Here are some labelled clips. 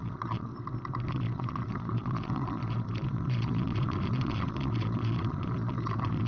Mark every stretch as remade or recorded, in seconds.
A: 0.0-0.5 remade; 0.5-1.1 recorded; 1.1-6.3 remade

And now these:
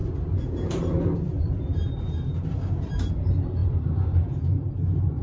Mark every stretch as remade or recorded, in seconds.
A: 0.0-3.1 remade; 3.1-3.6 recorded; 3.6-5.2 remade

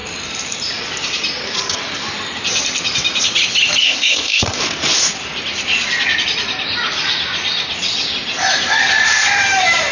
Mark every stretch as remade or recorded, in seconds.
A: 0.0-3.8 recorded; 3.8-4.6 remade; 4.6-9.9 recorded

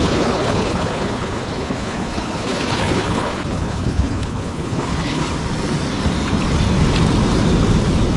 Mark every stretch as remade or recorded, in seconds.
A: 0.0-5.2 remade; 5.2-8.2 recorded

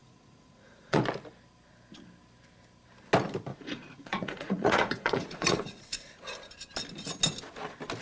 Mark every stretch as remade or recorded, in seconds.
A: 0.0-1.0 remade; 1.0-3.5 recorded; 3.5-6.2 remade; 6.2-8.0 recorded

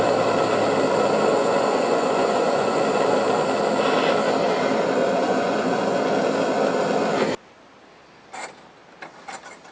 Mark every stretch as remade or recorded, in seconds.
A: 0.0-1.4 recorded; 1.4-2.8 remade; 2.8-5.0 recorded; 5.0-6.0 remade; 6.0-9.7 recorded